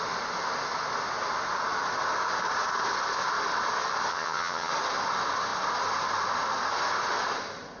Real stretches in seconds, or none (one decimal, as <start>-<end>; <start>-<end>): 0.0-4.1; 4.7-7.8